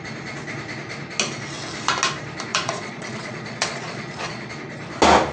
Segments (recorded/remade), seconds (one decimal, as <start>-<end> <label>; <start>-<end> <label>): 0.0-2.5 recorded; 2.5-4.5 remade; 4.5-5.3 recorded